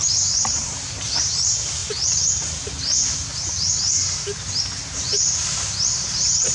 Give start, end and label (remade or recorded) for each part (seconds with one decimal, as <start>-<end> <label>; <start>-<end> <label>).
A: 0.0-1.8 remade; 1.8-4.8 recorded; 4.8-6.5 remade